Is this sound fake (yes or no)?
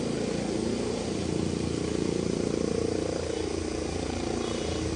yes